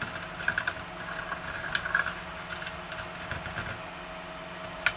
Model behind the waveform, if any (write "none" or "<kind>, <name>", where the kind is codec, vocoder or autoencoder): none